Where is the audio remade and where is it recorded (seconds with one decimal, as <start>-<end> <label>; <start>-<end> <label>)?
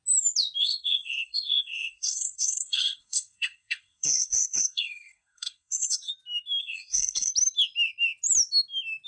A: 0.0-0.6 recorded; 0.6-6.1 remade; 6.1-6.6 recorded; 6.6-7.3 remade; 7.3-9.1 recorded